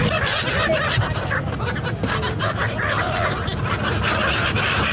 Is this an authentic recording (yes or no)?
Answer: yes